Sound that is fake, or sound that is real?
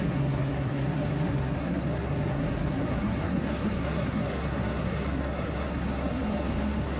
fake